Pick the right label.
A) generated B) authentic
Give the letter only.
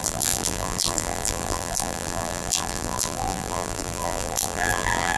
A